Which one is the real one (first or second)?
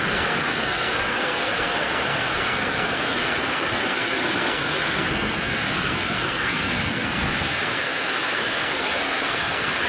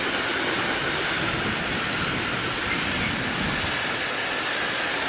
second